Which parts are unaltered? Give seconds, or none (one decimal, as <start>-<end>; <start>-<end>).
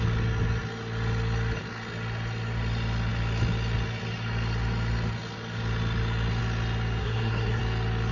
0.0-7.0; 7.6-8.1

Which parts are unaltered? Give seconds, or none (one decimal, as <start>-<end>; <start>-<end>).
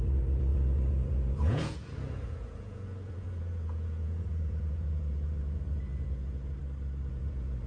6.6-7.1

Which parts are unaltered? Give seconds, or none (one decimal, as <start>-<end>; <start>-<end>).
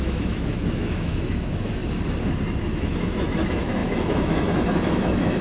1.8-2.6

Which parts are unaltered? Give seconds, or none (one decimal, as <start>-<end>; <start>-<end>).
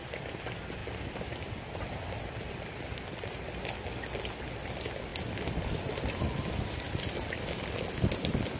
0.0-8.6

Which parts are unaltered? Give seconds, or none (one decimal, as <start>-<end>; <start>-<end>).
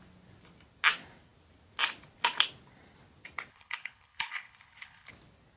0.0-3.5; 5.1-5.6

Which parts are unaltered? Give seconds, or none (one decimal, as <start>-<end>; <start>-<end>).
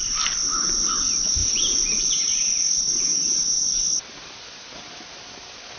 0.0-1.4; 3.8-5.8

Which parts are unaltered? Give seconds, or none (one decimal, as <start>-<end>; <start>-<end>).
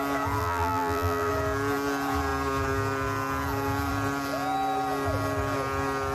0.0-0.4; 1.3-6.1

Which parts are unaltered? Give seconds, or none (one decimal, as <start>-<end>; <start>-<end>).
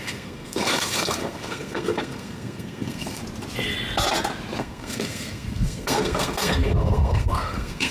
3.2-4.6